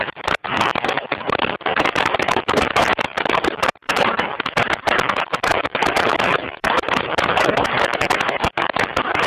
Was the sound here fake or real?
fake